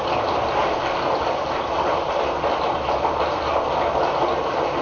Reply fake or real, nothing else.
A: real